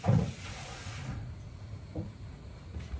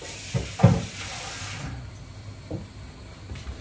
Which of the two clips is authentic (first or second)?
second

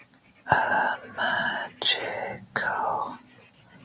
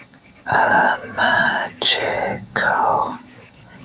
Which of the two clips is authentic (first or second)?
first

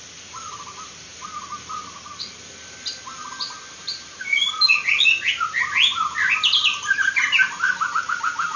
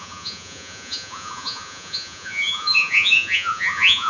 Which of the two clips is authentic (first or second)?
first